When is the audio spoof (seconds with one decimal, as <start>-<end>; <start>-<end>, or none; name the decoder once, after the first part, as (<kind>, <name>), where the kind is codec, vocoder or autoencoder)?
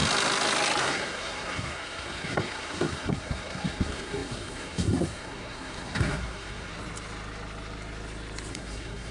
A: 0.8-6.7 (codec, SNAC); 8.5-9.1